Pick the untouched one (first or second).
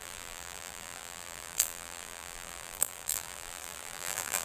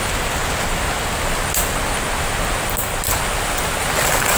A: second